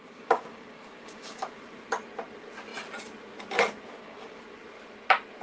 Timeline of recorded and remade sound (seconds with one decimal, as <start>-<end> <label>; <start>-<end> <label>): 0.0-1.4 remade; 1.4-3.9 recorded; 3.9-4.4 remade; 4.4-5.4 recorded